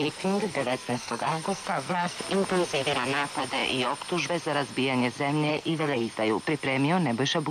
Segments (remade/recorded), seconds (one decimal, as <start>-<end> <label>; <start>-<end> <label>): 0.0-2.2 remade; 2.2-5.5 recorded; 5.5-6.1 remade; 6.1-7.5 recorded